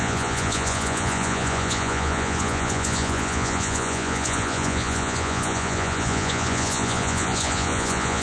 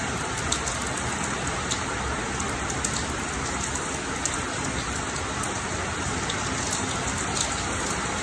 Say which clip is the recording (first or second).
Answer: second